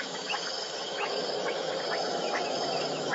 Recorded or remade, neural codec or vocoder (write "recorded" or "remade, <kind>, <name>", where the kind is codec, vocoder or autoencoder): remade, autoencoder, DAC-VAE